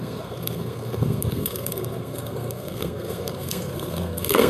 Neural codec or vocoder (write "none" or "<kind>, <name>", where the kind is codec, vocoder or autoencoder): codec, SNAC